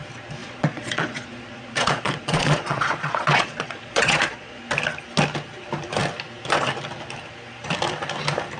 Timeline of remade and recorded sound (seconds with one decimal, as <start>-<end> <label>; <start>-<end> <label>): 0.0-0.4 recorded; 0.4-4.6 remade; 4.6-8.6 recorded